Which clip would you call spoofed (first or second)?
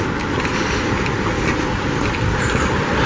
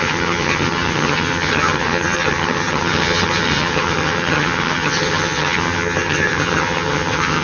second